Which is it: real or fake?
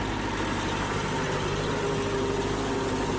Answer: real